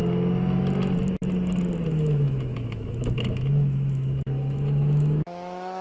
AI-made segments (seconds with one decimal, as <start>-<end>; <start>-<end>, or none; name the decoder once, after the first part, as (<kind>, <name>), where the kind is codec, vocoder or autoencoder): 1.9-5.8 (autoencoder, DAC-VAE)